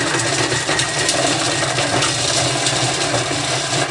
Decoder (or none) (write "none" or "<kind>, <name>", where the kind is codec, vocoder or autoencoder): none